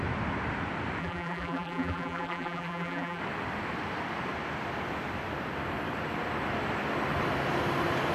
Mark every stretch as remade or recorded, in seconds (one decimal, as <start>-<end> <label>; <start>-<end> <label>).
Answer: 0.0-1.0 recorded; 1.0-3.2 remade; 3.2-8.1 recorded